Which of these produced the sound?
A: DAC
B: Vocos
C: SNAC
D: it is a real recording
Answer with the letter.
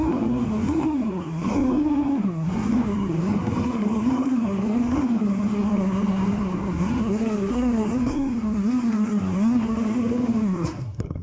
C